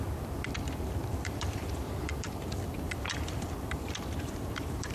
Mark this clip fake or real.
fake